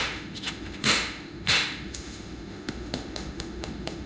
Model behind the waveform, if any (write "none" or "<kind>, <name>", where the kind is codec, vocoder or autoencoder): autoencoder, DAC-VAE